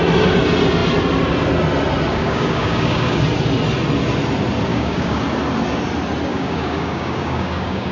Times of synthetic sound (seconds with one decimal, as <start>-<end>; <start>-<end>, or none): 2.1-3.2; 4.7-5.2; 6.3-7.9